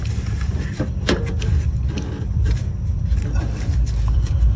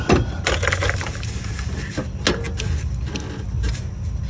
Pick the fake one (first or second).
first